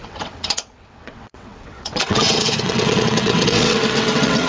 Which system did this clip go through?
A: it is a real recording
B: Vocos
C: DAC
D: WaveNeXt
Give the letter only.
D